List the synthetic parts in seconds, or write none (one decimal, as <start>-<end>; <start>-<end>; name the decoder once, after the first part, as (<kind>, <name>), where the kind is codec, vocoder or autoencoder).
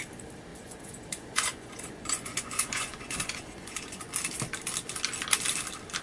0.5-4.1 (vocoder, Vocos)